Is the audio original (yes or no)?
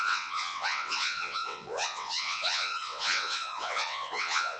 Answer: no